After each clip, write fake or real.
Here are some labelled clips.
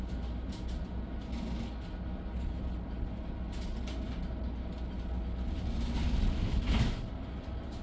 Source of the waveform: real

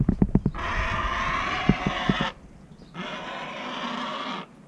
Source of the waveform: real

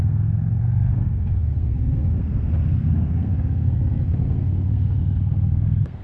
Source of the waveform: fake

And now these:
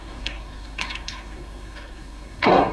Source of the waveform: fake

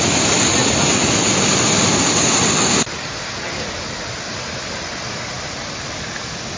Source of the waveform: real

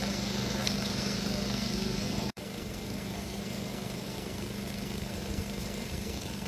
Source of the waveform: fake